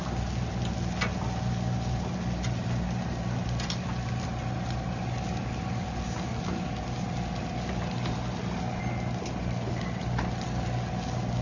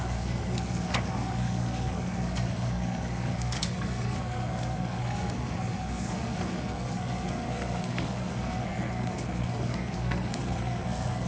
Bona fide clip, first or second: first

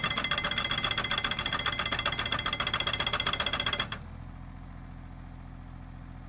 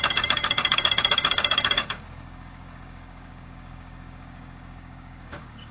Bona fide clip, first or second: first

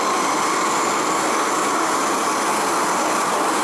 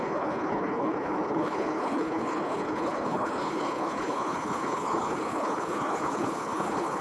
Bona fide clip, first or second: first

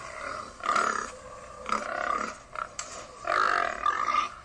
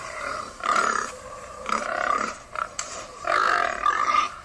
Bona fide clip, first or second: first